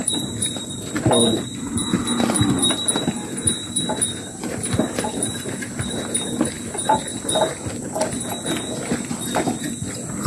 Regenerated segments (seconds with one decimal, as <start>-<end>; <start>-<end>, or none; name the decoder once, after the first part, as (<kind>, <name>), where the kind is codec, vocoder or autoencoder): 0.0-7.0 (vocoder, BigVGAN v2); 9.9-10.3